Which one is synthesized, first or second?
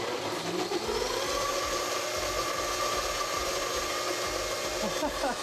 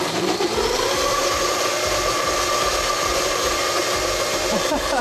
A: second